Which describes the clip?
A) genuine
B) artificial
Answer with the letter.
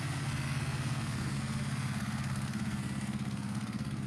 B